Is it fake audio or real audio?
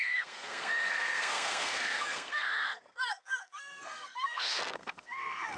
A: fake